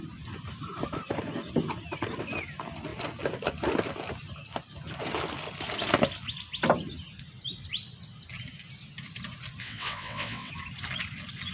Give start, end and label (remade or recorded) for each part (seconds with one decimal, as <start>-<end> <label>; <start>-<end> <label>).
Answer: 0.0-9.6 recorded; 9.6-10.5 remade; 10.5-11.5 recorded